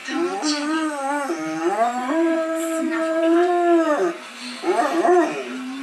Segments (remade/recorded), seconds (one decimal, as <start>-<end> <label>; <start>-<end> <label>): 0.0-3.5 remade; 3.5-5.8 recorded